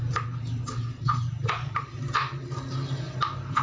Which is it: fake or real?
real